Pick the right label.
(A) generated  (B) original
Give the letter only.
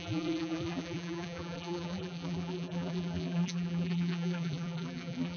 A